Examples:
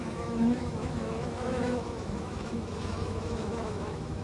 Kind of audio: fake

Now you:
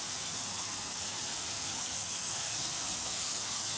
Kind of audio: fake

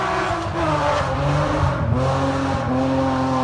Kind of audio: real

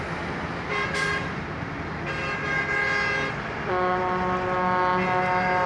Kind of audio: real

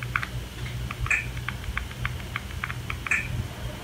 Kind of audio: real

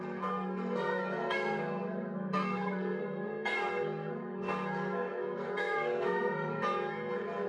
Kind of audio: fake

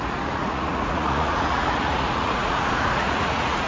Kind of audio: fake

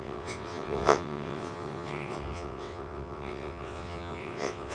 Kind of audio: fake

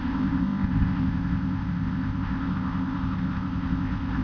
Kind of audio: fake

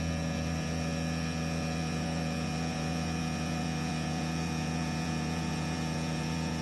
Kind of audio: fake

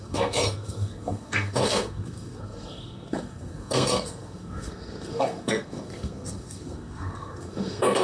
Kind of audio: fake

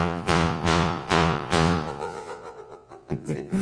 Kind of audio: fake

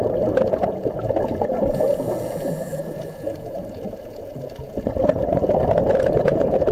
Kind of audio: fake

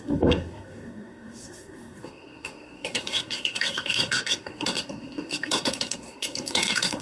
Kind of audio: fake